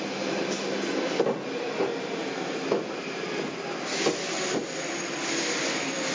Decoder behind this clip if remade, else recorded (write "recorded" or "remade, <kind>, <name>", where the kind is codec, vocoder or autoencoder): recorded